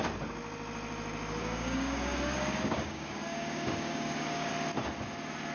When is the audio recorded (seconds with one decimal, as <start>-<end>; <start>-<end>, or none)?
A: 0.0-1.4; 4.5-5.5